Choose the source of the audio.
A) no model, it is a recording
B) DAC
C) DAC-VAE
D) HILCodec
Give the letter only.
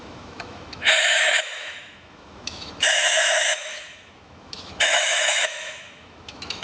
C